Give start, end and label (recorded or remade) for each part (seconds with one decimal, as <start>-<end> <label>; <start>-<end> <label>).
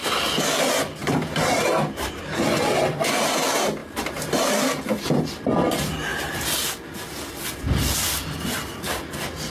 0.0-1.0 recorded; 1.0-2.2 remade; 2.2-9.5 recorded